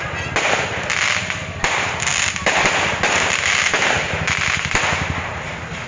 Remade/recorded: recorded